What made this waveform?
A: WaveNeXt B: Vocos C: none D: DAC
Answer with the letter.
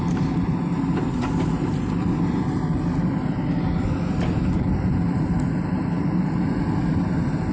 C